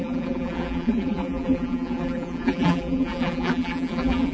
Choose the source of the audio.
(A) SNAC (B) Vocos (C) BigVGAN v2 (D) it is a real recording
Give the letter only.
C